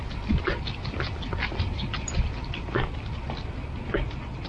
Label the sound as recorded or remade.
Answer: recorded